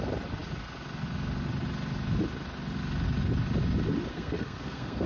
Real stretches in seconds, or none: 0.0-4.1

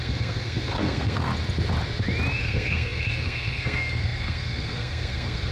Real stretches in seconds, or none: 1.3-2.4

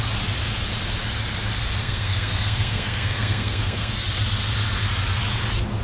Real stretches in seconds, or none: 0.0-1.8; 3.9-5.8